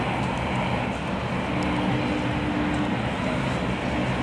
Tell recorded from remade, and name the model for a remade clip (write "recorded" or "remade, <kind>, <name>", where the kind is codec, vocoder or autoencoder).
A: recorded